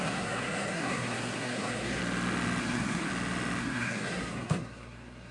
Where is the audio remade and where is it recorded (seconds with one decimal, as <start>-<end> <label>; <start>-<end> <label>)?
0.0-2.0 remade; 2.0-2.6 recorded; 2.6-3.1 remade; 3.1-3.6 recorded; 3.6-5.3 remade